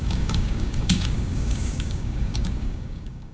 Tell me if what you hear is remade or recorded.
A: remade